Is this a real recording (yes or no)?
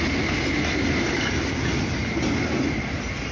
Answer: yes